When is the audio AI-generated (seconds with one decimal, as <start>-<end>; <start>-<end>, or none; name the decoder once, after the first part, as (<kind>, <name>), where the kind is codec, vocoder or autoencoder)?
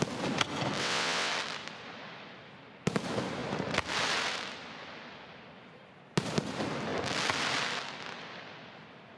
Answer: 0.8-1.3 (vocoder, WaveNeXt)